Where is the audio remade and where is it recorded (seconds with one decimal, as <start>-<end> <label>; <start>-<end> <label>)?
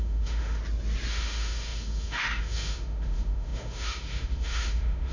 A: 0.0-0.6 remade; 0.6-1.1 recorded; 1.1-5.1 remade